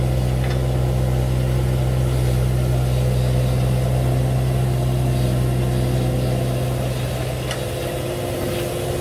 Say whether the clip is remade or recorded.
recorded